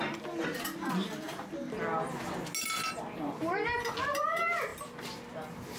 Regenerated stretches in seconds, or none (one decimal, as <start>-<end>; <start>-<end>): 0.0-0.4; 3.9-4.7

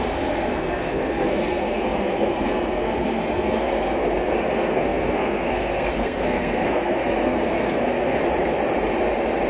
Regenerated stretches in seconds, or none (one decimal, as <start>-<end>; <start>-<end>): 0.0-8.2

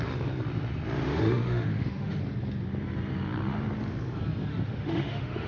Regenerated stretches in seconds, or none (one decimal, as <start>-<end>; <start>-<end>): 1.0-2.2; 4.5-5.5

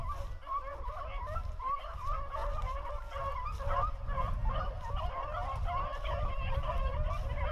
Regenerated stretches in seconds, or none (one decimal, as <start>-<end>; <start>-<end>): none